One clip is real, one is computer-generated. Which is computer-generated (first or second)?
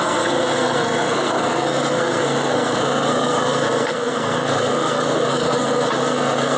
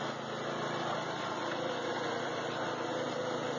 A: first